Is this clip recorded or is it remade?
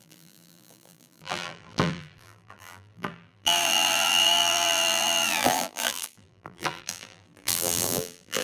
remade